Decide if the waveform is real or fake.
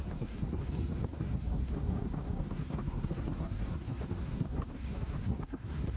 fake